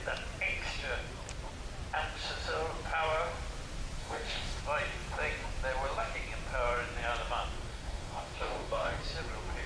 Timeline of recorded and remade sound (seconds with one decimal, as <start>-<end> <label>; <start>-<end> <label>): 0.0-4.0 recorded; 4.0-4.6 remade; 4.6-7.7 recorded; 7.7-9.0 remade; 9.0-9.7 recorded